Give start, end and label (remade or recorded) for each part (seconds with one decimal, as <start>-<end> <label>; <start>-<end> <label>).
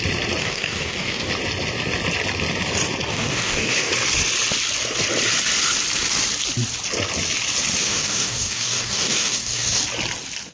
0.0-0.4 recorded; 0.4-1.3 remade; 1.3-3.1 recorded; 3.1-3.9 remade; 3.9-7.8 recorded; 7.8-9.8 remade; 9.8-10.5 recorded